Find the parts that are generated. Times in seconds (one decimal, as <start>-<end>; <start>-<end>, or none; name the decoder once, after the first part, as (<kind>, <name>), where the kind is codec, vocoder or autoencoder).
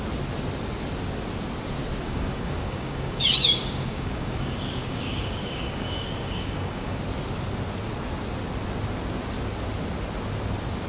2.0-7.0 (codec, DAC)